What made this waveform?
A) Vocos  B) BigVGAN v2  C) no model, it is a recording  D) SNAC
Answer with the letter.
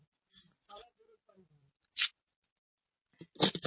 C